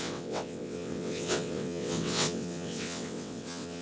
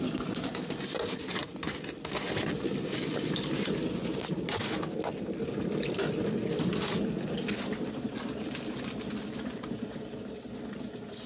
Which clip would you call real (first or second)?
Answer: second